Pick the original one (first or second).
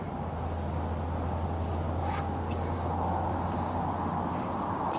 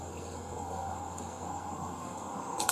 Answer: first